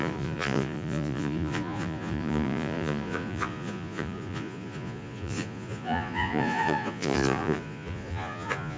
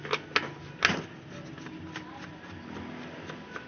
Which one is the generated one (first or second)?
first